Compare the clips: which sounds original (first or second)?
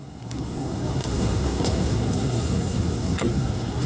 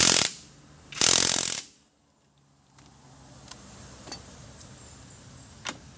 second